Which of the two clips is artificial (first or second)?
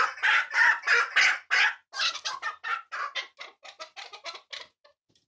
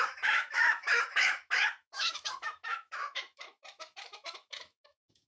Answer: second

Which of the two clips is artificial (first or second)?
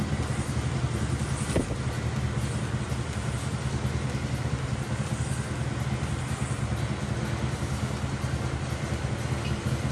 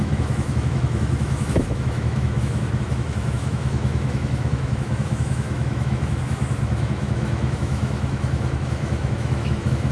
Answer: second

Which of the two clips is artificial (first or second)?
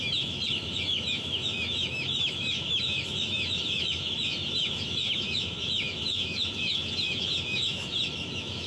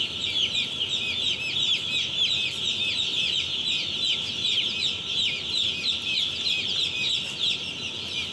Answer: first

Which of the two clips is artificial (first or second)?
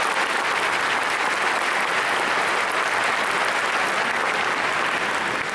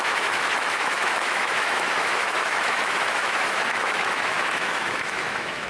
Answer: second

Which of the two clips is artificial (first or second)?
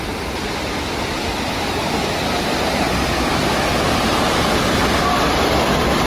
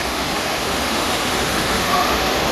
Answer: second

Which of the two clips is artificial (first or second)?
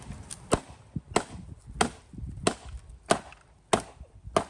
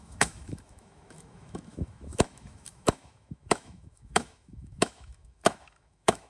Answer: second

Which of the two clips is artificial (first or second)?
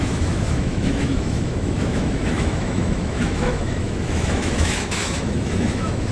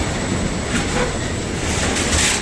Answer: first